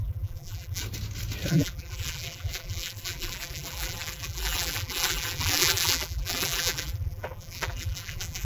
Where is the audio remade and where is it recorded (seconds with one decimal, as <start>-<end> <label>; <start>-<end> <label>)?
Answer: 0.0-0.8 remade; 0.8-1.5 recorded; 1.5-8.4 remade

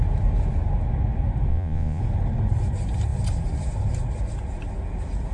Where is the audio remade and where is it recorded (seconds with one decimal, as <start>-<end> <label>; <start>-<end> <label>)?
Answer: 0.0-1.5 recorded; 1.5-2.0 remade; 2.0-5.3 recorded

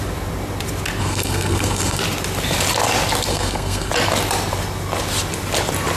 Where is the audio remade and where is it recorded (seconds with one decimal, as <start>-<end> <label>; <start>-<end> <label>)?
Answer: 0.0-1.0 recorded; 1.0-2.0 remade; 2.0-3.3 recorded; 3.3-3.9 remade; 3.9-6.0 recorded

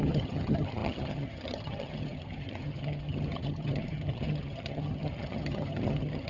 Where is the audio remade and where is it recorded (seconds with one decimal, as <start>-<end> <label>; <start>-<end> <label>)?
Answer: 0.0-6.3 remade

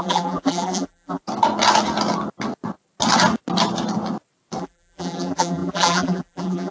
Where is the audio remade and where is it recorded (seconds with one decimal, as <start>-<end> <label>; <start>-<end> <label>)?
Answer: 0.0-1.2 remade; 1.2-4.6 recorded; 4.6-6.7 remade

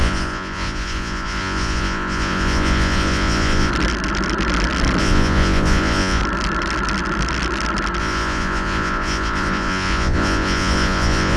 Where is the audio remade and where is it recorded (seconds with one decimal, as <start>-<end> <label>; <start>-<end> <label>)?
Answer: 0.0-3.7 remade; 3.7-5.0 recorded; 5.0-6.2 remade; 6.2-8.0 recorded; 8.0-11.4 remade